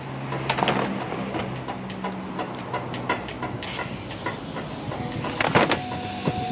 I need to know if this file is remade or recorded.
recorded